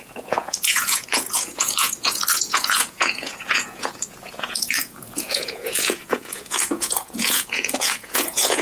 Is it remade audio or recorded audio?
remade